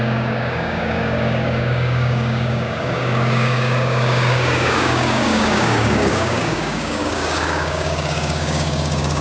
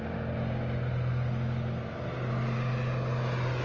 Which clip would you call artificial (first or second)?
first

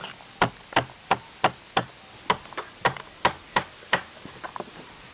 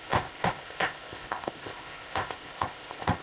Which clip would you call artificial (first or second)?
second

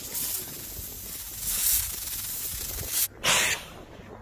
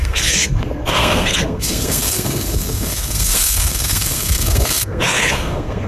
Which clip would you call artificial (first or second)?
second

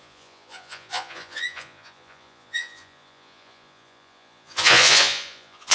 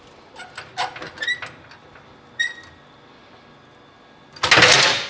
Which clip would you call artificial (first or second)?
first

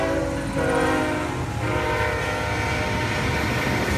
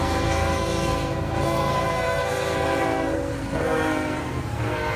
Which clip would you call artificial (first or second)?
second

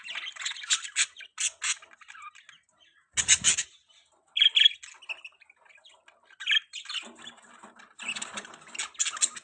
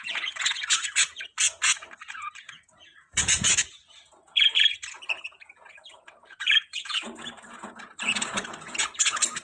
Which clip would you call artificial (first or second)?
second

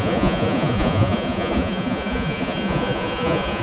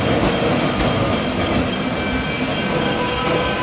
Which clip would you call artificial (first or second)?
first